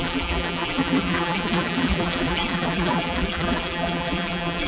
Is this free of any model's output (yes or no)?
no